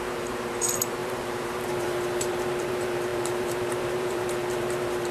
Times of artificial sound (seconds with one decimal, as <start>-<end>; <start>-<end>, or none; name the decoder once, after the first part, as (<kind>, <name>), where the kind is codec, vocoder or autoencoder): 0.0-5.1 (vocoder, BigVGAN v2)